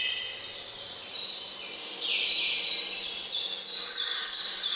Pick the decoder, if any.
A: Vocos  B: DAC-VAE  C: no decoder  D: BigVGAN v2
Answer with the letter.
D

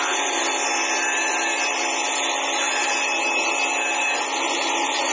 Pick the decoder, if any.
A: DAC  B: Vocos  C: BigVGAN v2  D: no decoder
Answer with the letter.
D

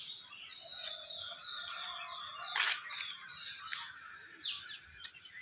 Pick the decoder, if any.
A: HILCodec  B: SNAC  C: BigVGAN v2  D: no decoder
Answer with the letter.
D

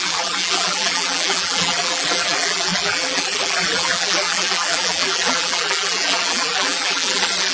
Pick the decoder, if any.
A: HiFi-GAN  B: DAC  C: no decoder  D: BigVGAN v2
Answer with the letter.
D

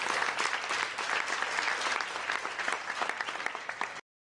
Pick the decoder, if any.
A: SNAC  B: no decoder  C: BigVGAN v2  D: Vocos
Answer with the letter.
C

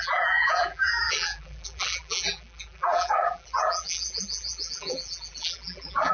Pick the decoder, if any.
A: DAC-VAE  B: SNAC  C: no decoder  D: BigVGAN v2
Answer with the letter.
D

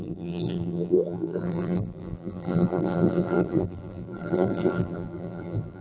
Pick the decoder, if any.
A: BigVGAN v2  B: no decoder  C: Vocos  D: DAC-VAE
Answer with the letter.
A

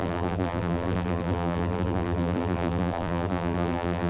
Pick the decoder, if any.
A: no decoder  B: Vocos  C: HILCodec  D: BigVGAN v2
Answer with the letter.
D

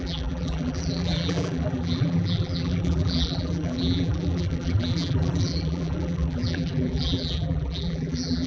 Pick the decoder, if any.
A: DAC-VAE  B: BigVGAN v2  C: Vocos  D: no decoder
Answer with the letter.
B